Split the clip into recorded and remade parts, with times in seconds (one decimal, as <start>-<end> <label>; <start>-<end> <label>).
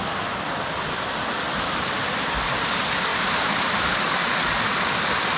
0.0-3.1 recorded; 3.1-3.9 remade; 3.9-5.4 recorded